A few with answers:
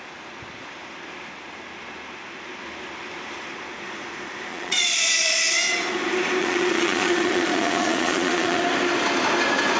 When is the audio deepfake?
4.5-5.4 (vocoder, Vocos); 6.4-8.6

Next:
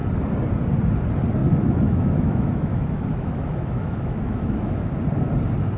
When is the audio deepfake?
1.4-4.9 (autoencoder, DAC-VAE)